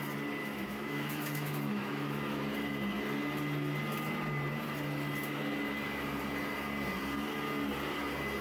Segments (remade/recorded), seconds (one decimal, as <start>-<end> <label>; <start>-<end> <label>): 0.0-0.4 recorded; 0.4-2.4 remade; 2.4-8.4 recorded